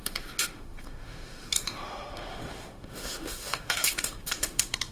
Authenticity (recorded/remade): remade